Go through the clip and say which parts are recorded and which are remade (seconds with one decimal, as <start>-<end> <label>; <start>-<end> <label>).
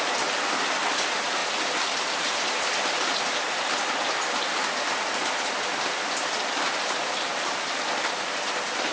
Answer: 0.0-8.9 recorded